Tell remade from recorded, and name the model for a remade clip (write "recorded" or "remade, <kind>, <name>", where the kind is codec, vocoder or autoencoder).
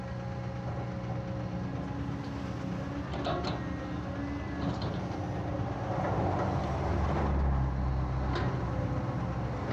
recorded